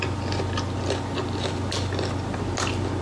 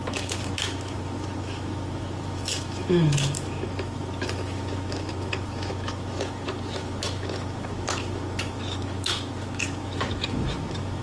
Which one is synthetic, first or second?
second